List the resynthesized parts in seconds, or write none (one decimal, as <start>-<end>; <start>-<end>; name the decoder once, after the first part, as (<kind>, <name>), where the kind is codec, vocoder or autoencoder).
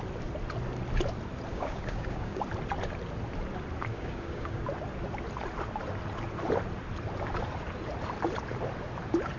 1.5-2.4 (codec, DAC); 3.9-4.6